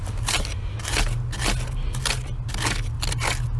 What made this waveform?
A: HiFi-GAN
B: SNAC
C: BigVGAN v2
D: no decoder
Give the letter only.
D